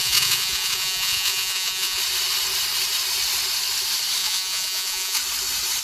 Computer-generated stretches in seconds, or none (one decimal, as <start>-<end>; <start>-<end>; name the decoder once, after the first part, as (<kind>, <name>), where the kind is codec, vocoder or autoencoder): 0.0-2.0 (vocoder, Vocos); 4.2-5.2